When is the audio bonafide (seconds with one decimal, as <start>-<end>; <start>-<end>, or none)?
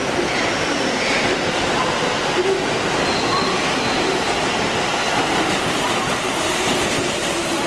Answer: 1.8-7.7